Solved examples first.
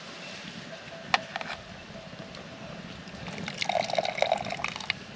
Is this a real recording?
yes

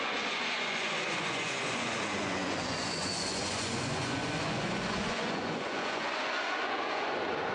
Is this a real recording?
no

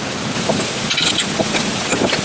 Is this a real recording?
yes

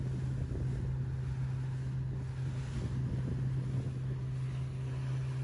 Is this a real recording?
yes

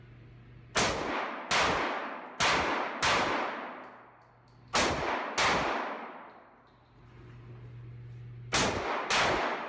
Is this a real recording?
yes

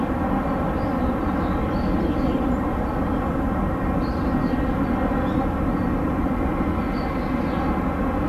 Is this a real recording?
yes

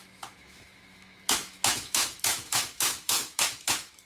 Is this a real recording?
no